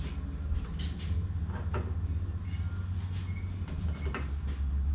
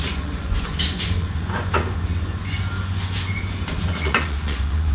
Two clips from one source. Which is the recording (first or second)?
first